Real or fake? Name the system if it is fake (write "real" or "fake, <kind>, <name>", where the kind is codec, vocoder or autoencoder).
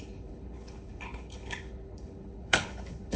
fake, codec, HILCodec